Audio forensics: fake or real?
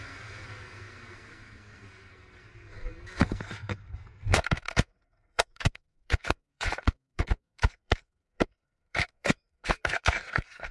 fake